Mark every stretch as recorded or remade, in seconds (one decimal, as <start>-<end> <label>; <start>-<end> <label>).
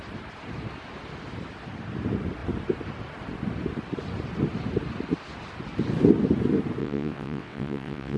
0.0-6.8 recorded; 6.8-8.2 remade